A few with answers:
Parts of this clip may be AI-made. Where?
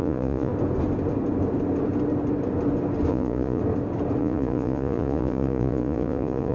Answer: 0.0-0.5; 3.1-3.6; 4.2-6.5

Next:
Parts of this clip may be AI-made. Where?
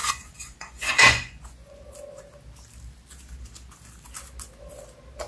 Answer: 0.0-1.8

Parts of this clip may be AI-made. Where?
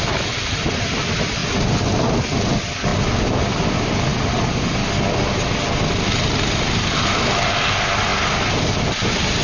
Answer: none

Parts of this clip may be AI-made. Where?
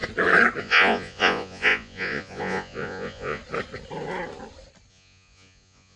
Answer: 0.6-3.4; 4.9-6.0